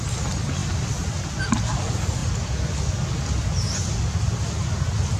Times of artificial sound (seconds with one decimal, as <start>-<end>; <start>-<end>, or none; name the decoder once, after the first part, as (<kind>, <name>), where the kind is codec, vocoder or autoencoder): none